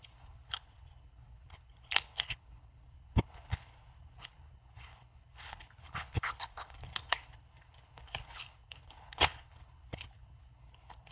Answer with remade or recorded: remade